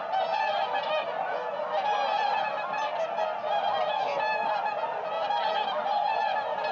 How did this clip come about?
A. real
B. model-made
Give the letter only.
A